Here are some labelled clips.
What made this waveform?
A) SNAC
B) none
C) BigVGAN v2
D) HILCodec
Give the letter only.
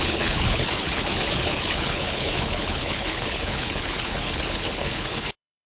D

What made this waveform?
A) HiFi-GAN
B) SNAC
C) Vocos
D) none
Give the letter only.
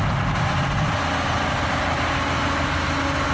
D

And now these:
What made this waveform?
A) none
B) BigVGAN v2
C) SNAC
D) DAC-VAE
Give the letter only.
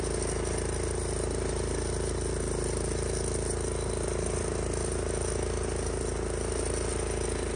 A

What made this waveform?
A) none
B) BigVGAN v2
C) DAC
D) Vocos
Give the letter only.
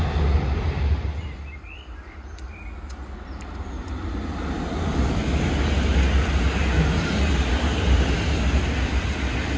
A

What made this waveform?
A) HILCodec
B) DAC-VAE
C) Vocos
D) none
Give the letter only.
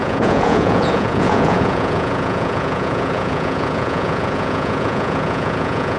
C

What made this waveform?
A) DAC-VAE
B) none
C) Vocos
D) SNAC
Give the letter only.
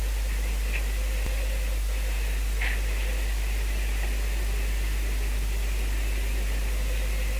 B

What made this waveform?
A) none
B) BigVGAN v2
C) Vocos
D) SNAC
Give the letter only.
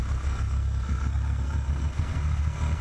D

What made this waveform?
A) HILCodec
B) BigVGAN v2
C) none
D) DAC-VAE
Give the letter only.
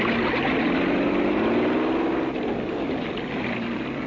C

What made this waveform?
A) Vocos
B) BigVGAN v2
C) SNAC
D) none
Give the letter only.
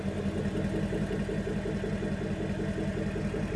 D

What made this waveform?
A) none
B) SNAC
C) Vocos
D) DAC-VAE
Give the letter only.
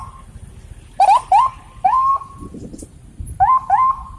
A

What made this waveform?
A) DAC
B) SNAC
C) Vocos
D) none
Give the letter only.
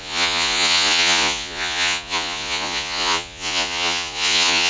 C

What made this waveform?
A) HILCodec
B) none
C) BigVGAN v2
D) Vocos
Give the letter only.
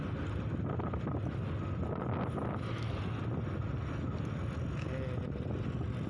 B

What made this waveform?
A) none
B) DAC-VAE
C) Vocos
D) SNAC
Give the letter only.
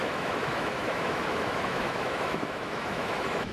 B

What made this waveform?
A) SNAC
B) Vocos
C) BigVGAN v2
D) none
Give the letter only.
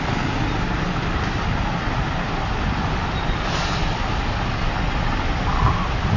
D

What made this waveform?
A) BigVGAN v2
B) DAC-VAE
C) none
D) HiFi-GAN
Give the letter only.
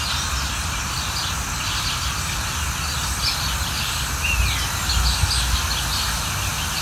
C